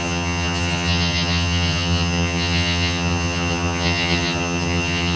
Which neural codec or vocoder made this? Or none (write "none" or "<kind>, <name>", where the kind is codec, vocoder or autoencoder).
vocoder, HiFi-GAN